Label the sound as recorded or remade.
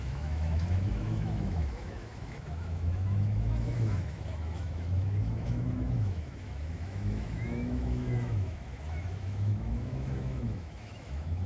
remade